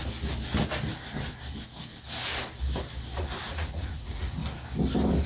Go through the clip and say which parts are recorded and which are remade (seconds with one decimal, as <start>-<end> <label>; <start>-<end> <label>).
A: 0.0-3.2 recorded; 3.2-4.4 remade; 4.4-5.3 recorded